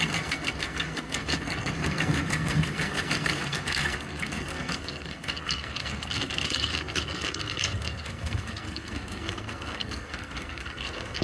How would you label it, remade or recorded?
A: remade